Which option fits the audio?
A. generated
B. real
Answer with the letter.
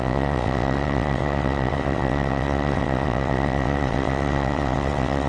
A